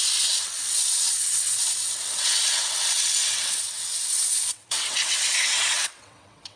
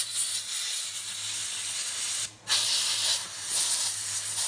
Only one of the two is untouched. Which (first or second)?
second